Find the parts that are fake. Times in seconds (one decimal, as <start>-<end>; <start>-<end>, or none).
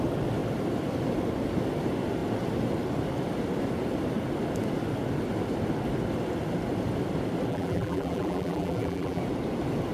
7.5-9.2